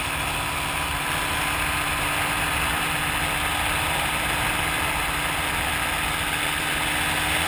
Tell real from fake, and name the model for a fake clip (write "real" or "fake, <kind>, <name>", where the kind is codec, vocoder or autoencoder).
real